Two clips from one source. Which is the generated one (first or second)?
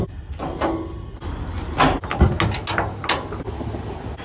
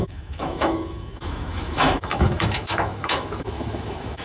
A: second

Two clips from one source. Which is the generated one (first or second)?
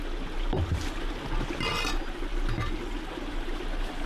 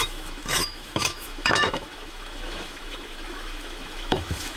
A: second